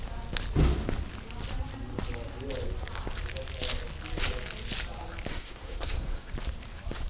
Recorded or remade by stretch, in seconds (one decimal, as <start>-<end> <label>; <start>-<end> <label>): 0.0-5.3 recorded; 5.3-6.3 remade; 6.3-7.1 recorded